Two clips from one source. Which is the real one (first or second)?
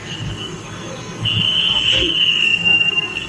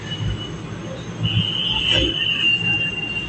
second